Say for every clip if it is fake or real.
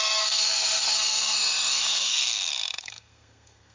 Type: fake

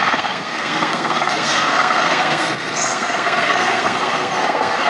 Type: fake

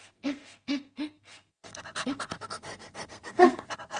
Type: fake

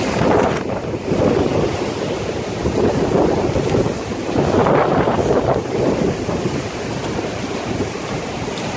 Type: real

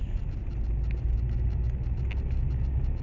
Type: real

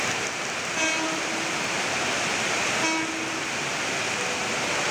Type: real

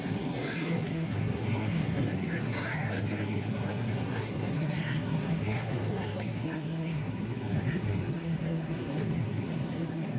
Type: fake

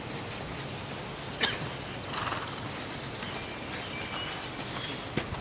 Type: real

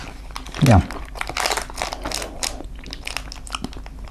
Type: real